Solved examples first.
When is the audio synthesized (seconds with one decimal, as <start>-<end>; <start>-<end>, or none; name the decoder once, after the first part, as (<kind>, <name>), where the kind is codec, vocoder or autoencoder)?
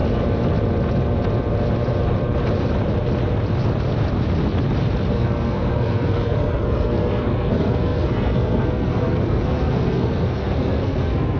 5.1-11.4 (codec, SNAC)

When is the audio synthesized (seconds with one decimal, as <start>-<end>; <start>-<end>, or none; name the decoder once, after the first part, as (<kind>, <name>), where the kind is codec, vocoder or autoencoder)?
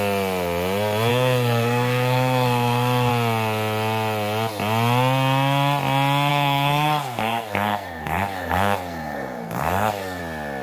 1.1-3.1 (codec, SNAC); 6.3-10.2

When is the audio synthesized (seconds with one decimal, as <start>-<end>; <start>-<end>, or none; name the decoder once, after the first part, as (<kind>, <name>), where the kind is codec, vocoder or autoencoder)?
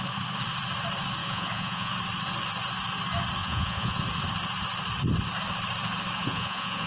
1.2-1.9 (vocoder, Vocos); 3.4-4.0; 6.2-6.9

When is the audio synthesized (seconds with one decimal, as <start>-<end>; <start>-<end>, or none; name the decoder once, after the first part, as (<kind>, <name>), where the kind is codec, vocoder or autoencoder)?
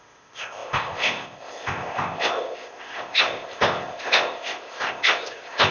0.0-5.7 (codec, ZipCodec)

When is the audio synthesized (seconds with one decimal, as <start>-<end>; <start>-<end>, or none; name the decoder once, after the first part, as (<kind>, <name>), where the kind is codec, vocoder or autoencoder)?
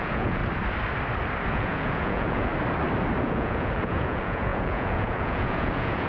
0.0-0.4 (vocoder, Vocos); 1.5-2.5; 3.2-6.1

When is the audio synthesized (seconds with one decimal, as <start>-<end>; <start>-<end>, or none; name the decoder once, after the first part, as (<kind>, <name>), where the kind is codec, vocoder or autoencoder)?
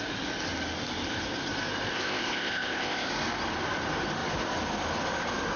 1.9-3.1 (codec, ZipCodec)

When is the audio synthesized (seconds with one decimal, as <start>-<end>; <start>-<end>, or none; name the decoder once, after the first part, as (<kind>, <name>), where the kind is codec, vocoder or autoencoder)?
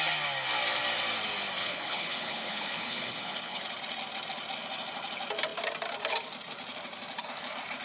1.6-3.6 (codec, HILCodec)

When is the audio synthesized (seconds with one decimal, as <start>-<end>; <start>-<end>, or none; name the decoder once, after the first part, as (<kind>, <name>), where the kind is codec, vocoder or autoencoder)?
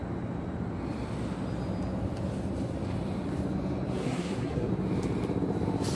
4.0-4.7 (codec, SNAC)